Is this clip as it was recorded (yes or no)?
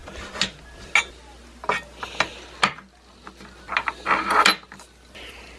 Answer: yes